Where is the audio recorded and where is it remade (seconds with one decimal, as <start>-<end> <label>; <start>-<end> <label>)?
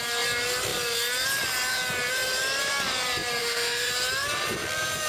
0.0-3.4 recorded; 3.4-3.9 remade; 3.9-5.1 recorded